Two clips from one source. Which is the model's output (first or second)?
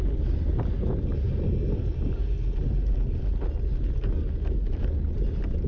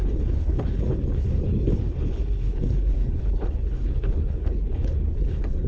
second